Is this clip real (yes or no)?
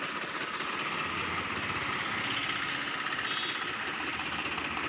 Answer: yes